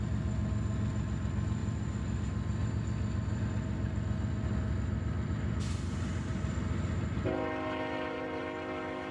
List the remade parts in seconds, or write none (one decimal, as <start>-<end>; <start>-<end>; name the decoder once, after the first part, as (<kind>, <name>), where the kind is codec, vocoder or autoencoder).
none